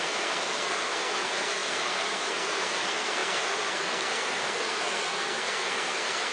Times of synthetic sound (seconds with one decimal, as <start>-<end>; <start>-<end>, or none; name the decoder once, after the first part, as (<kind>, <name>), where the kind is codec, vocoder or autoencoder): 0.0-6.3 (codec, SNAC)